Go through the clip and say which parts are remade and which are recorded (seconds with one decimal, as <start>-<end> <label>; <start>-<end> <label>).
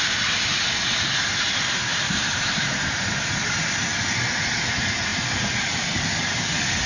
0.0-1.9 recorded; 1.9-2.7 remade; 2.7-6.9 recorded